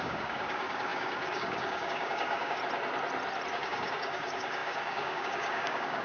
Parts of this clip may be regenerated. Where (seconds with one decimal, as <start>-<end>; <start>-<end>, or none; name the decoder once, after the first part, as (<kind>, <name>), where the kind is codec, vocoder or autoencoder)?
0.0-2.6 (codec, DAC); 3.5-6.0